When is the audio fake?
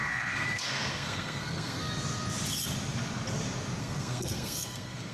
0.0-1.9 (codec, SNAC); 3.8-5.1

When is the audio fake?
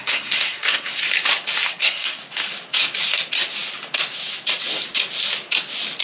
0.0-1.0 (codec, SNAC); 1.7-2.2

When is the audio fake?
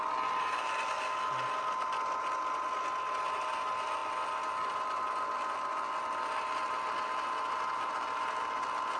none